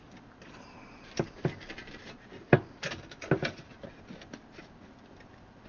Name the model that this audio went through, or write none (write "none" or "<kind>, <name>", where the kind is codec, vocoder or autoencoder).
none